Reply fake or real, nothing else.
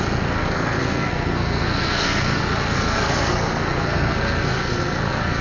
fake